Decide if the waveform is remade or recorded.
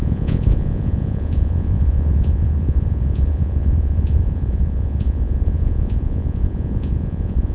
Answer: remade